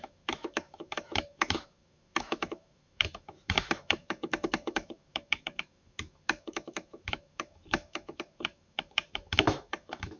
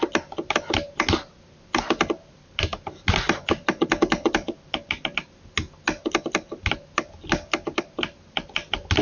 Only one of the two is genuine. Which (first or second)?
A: second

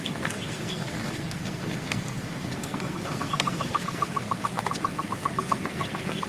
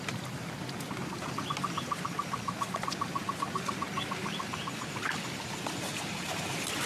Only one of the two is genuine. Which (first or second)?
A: second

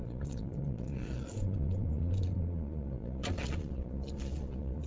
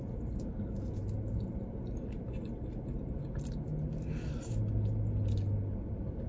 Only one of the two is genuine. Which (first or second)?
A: second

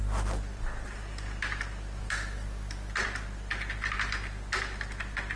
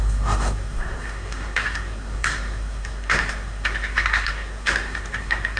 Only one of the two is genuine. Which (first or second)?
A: first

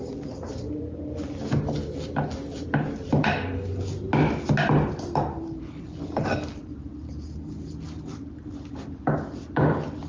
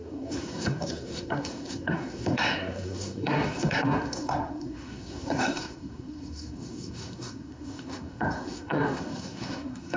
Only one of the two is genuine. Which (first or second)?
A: first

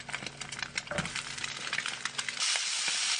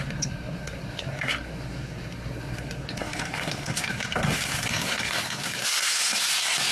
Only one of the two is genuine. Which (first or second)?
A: first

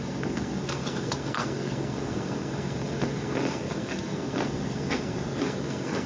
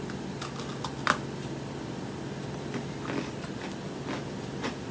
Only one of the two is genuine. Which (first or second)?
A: second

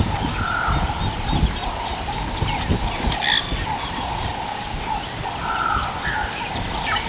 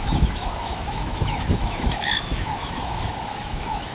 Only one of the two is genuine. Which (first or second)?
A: first